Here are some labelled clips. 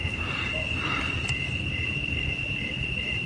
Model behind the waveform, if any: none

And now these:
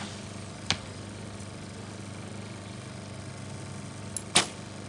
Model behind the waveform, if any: none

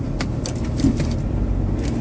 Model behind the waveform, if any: none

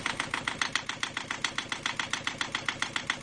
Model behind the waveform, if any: none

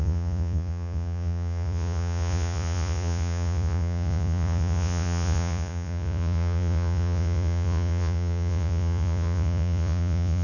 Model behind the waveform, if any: vocoder, Vocos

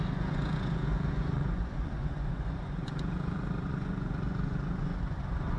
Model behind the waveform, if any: vocoder, Vocos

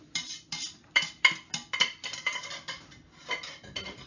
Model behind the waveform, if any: none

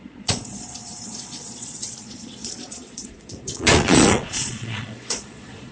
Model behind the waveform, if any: vocoder, Vocos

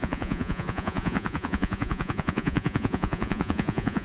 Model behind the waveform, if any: vocoder, Vocos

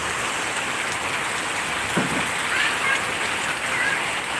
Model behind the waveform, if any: none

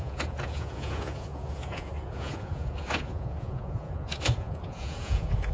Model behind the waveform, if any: vocoder, Vocos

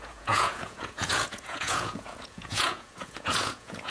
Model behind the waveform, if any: vocoder, Vocos